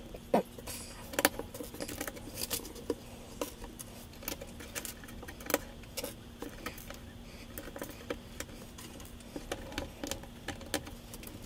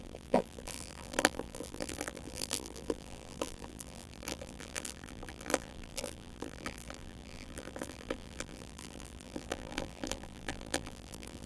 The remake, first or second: second